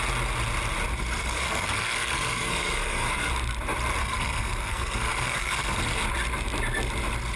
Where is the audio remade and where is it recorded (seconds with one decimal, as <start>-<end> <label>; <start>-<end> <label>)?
0.0-1.2 recorded; 1.2-3.3 remade; 3.3-4.0 recorded; 4.0-5.8 remade; 5.8-7.4 recorded